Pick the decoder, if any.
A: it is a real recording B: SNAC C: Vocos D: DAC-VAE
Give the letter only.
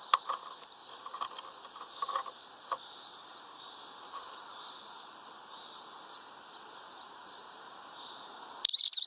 A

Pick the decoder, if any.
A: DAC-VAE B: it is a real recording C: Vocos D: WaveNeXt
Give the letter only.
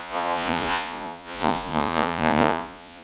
C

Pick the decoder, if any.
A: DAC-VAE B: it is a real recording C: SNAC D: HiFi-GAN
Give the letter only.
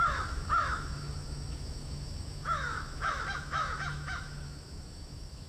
A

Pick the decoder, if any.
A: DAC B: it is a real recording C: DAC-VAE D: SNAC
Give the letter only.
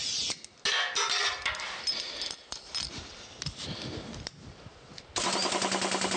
B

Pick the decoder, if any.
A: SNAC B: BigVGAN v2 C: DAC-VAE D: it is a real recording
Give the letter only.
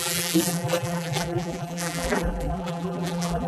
B